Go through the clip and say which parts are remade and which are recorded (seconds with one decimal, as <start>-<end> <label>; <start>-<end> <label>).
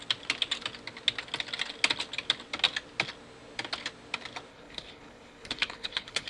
0.0-4.5 recorded; 4.5-6.3 remade